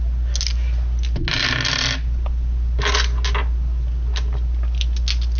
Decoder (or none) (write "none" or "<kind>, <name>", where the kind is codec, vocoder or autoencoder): none